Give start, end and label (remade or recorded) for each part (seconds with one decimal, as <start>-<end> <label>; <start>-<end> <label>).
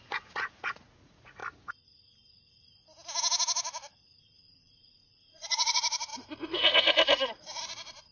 0.0-1.4 remade; 1.4-4.2 recorded; 4.2-8.1 remade